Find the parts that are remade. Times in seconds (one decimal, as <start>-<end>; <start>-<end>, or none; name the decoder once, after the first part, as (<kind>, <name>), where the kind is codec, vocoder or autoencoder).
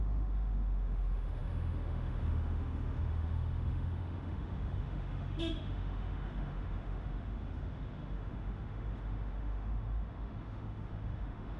0.0-11.6 (autoencoder, DAC-VAE)